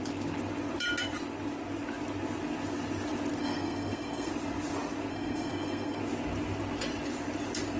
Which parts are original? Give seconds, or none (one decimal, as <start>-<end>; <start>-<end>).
0.0-3.4; 4.3-5.1; 6.0-7.8